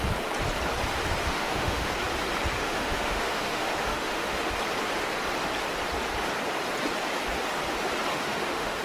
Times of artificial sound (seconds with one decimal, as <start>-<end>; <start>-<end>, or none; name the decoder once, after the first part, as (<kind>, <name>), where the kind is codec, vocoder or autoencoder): 1.2-1.9 (autoencoder, DAC-VAE); 2.6-4.5; 8.1-8.8